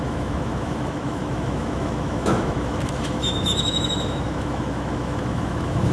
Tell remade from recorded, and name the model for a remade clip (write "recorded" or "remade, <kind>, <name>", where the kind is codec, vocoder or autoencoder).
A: remade, autoencoder, DAC-VAE